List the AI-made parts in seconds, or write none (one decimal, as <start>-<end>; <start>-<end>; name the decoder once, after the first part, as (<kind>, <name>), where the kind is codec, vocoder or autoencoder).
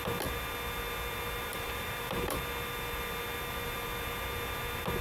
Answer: 1.5-2.4 (vocoder, BigVGAN v2)